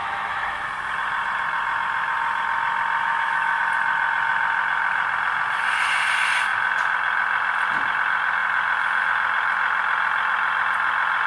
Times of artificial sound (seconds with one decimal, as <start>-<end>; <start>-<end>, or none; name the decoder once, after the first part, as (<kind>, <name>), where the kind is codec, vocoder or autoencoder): 0.0-0.6 (autoencoder, DAC-VAE); 3.0-3.6